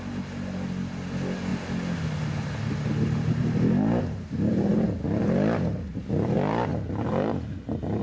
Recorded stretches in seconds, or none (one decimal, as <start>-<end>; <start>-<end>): 0.0-8.0